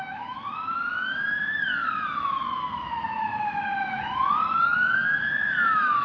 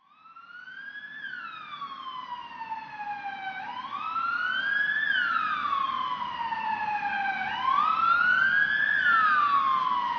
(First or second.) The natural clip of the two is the second